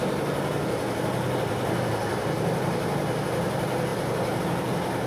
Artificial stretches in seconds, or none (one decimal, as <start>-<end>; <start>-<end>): none